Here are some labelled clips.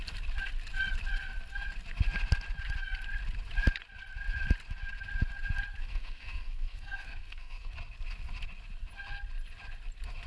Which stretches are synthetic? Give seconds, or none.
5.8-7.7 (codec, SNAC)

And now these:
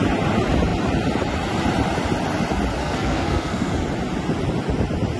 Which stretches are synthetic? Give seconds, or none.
2.8-3.7 (codec, SNAC)

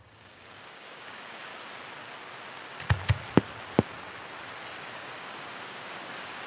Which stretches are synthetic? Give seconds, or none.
0.0-1.5 (codec, DAC); 4.8-6.5